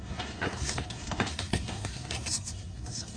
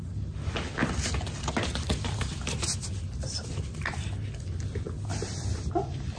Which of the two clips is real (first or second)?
second